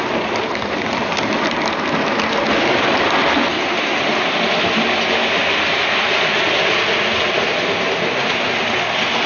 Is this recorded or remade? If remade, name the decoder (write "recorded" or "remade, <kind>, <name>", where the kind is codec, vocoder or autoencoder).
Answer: recorded